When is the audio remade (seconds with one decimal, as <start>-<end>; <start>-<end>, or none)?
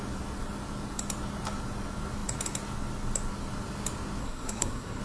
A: 4.2-5.0